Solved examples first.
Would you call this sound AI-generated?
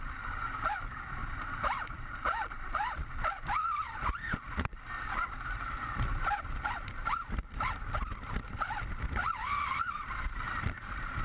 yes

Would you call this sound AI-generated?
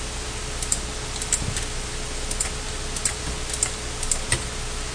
no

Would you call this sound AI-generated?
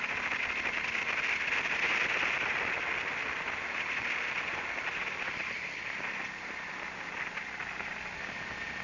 no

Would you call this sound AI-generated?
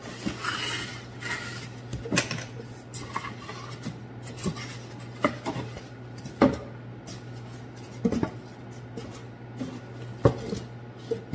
no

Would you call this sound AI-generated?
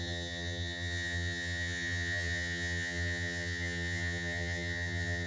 yes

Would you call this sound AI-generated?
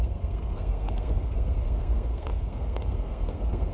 yes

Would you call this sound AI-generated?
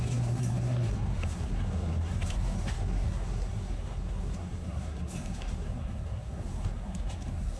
yes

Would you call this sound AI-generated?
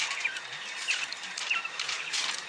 yes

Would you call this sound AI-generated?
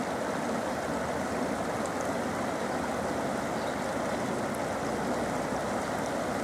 no